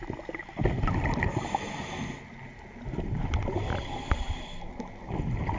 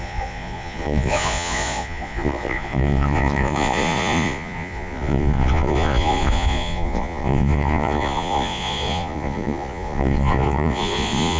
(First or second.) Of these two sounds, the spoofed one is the second